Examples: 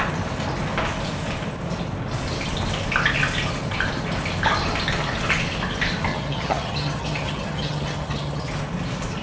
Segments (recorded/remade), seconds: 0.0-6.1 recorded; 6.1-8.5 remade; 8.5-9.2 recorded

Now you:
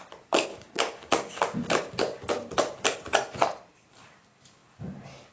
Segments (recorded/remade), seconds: 0.0-0.5 recorded; 0.5-1.4 remade; 1.4-5.3 recorded

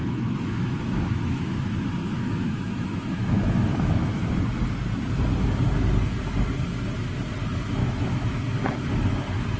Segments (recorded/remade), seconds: 0.0-4.3 remade; 4.3-7.8 recorded; 7.8-8.4 remade; 8.4-9.6 recorded

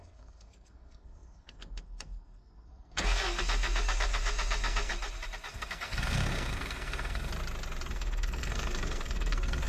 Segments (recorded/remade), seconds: 0.0-4.9 remade; 4.9-5.5 recorded; 5.5-7.3 remade; 7.3-7.9 recorded; 7.9-9.7 remade

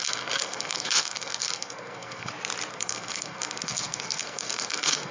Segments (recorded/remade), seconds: 0.0-2.3 remade; 2.3-2.7 recorded; 2.7-5.1 remade

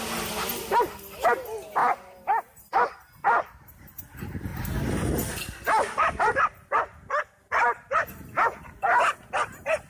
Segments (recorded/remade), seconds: 0.0-1.8 recorded; 1.8-2.6 remade; 2.6-4.5 recorded; 4.5-6.8 remade; 6.8-9.9 recorded